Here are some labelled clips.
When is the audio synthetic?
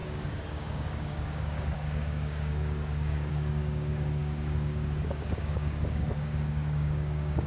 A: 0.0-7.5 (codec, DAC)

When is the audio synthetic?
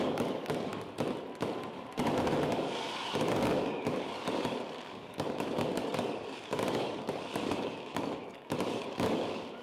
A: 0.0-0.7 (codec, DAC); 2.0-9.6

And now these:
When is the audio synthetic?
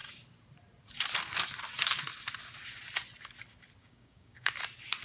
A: 3.8-4.5 (codec, DAC)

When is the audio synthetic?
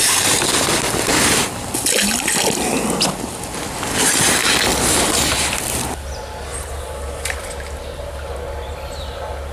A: none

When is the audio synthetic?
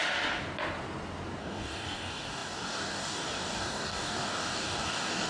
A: 1.4-5.3 (codec, DAC)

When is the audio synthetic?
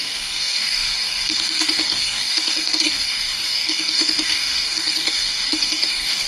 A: 0.0-6.3 (codec, DAC)